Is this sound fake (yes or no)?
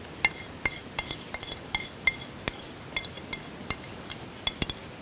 no